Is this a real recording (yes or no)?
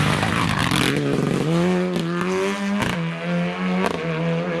yes